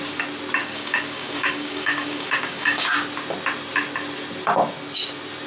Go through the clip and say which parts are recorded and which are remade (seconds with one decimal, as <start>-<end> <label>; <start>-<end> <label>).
0.0-0.6 recorded; 0.6-2.9 remade; 2.9-5.5 recorded

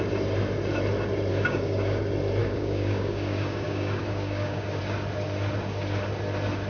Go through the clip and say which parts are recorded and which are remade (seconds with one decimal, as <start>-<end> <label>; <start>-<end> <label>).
0.0-1.3 recorded; 1.3-2.0 remade; 2.0-2.4 recorded; 2.4-4.8 remade; 4.8-6.7 recorded